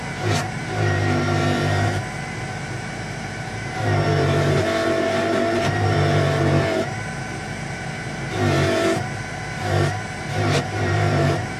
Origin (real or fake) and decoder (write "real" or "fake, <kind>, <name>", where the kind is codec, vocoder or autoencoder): fake, vocoder, BigVGAN v2